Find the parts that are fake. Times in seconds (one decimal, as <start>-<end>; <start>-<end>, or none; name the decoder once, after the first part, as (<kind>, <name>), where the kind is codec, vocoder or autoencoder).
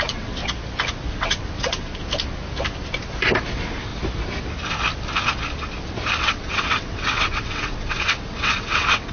0.0-0.4 (vocoder, WaveNeXt); 1.1-1.9; 3.5-3.9; 6.2-9.1